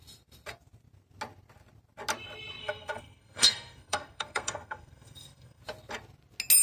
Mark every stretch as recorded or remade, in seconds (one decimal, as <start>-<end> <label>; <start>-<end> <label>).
0.0-2.6 recorded; 2.6-5.6 remade; 5.6-6.6 recorded